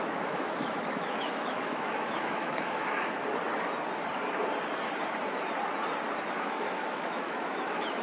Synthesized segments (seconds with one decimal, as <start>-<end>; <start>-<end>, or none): 0.0-3.2; 6.3-8.0